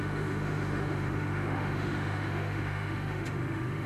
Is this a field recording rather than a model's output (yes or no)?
no